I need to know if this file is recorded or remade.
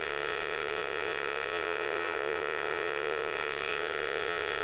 remade